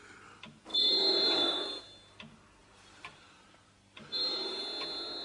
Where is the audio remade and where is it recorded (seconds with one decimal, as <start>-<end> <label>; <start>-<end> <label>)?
0.0-0.7 recorded; 0.7-1.8 remade; 1.8-2.6 recorded; 2.6-4.6 remade; 4.6-5.2 recorded